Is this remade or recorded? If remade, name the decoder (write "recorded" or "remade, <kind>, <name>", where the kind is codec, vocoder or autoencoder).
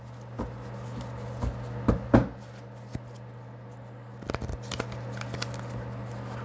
recorded